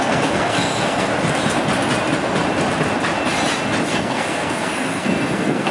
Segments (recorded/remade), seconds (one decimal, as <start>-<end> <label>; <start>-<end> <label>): 0.0-1.1 remade; 1.1-3.9 recorded; 3.9-5.7 remade